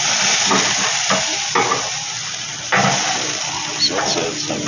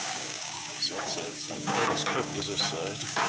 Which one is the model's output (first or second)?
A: second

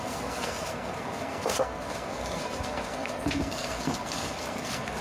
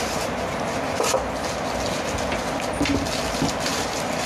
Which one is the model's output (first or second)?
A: first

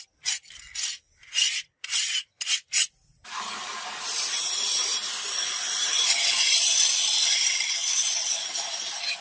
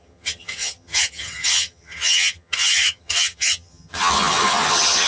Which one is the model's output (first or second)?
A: second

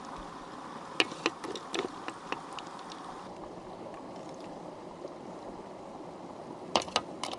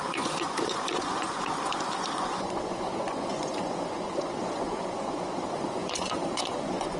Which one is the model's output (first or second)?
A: second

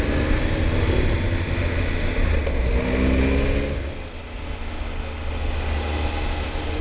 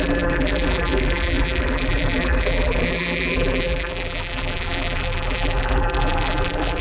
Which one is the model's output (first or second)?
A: second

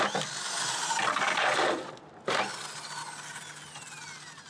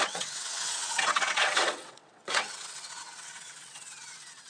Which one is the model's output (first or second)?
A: second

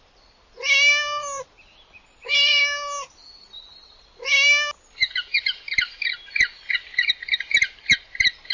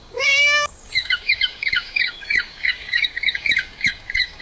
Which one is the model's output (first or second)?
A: second